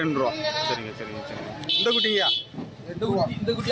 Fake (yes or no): no